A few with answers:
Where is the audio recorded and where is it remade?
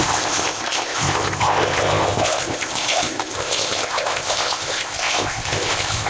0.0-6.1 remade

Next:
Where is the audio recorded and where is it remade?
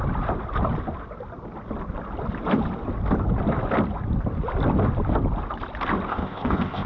0.0-6.1 recorded; 6.1-6.9 remade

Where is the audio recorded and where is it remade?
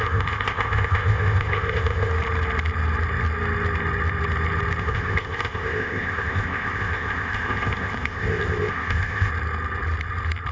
0.0-2.1 remade; 2.1-4.8 recorded; 4.8-9.3 remade; 9.3-10.5 recorded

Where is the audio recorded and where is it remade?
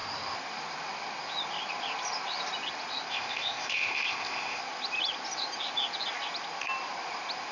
0.0-3.1 recorded; 3.1-4.6 remade; 4.6-7.5 recorded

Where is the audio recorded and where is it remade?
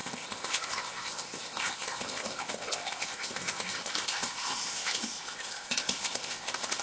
0.0-6.8 remade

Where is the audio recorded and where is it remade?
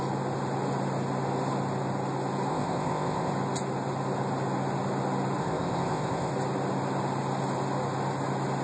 0.0-2.5 recorded; 2.5-3.3 remade; 3.3-5.4 recorded; 5.4-6.3 remade; 6.3-8.6 recorded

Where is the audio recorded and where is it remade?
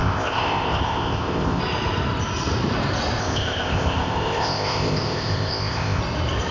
0.0-1.6 remade; 1.6-3.2 recorded; 3.2-6.0 remade; 6.0-6.5 recorded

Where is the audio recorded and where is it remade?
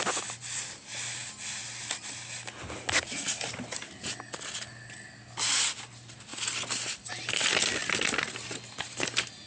0.0-9.5 recorded